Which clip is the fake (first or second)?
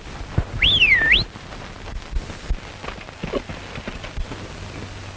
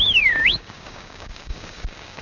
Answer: second